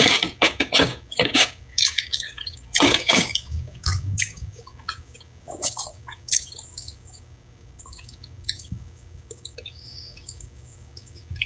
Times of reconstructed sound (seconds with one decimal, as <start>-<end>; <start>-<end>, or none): 0.0-11.5